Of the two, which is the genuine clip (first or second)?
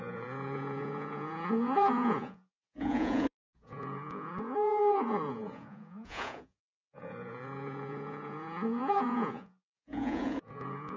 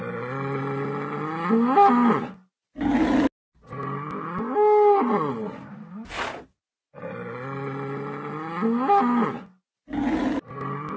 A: second